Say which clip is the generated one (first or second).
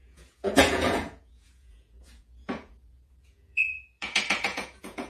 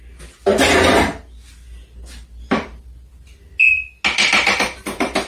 first